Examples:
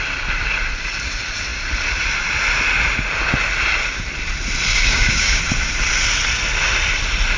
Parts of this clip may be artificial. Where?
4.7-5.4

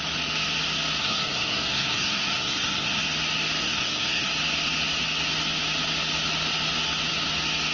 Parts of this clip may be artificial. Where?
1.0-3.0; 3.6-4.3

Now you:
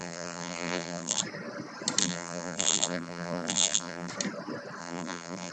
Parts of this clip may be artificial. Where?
0.0-1.2; 2.0-4.1; 4.8-5.5

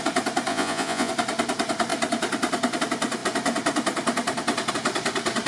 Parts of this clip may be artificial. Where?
0.5-1.1

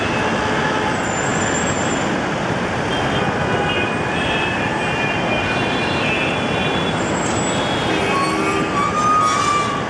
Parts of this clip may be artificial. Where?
none

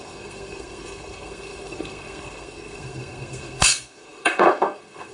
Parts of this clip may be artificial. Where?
0.0-5.1

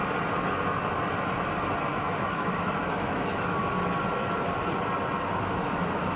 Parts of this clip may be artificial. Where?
1.9-3.6; 5.3-6.2